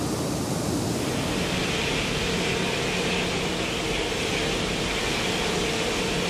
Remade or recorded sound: recorded